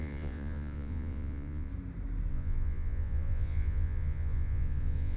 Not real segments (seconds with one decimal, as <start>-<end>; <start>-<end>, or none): 0.0-1.7; 2.3-5.2